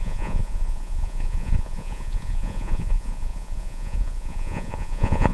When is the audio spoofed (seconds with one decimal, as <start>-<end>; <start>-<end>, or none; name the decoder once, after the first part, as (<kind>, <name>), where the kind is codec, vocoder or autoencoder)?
0.0-5.3 (vocoder, Vocos)